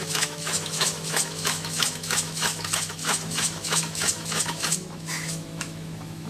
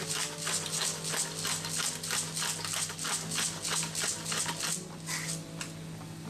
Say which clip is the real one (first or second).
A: second